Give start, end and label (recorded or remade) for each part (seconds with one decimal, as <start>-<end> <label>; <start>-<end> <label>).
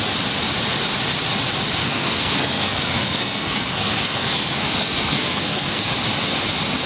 0.0-1.8 recorded; 1.8-5.9 remade; 5.9-6.9 recorded